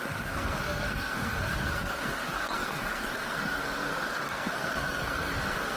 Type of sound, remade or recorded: remade